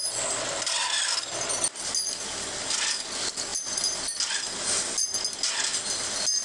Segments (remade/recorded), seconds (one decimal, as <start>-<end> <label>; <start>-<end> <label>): 0.0-6.4 recorded